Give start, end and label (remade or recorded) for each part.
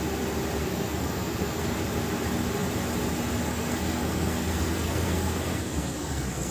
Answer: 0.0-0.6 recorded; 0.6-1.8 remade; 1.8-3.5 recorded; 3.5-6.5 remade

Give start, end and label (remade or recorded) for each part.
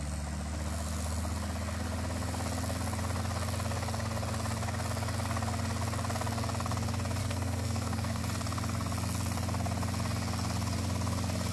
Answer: 0.0-7.2 recorded; 7.2-8.2 remade; 8.2-11.5 recorded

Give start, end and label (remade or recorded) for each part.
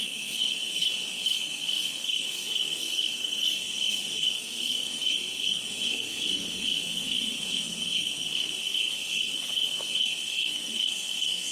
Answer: 0.0-11.5 remade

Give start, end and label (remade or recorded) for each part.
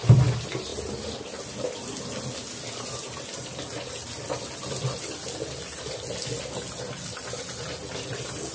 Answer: 0.0-8.5 recorded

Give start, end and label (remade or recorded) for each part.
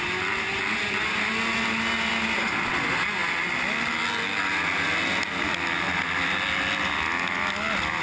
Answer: 0.0-8.0 recorded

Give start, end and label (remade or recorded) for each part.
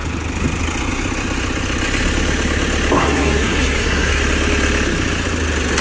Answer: 0.0-3.0 recorded; 3.0-4.2 remade; 4.2-5.8 recorded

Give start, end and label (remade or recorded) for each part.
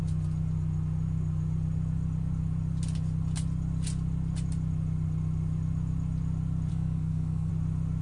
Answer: 0.0-6.7 recorded; 6.7-7.5 remade; 7.5-8.0 recorded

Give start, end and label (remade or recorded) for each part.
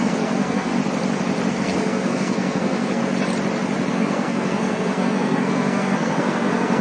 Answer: 0.0-0.7 remade; 0.7-1.5 recorded; 1.5-3.0 remade; 3.0-3.9 recorded; 3.9-6.8 remade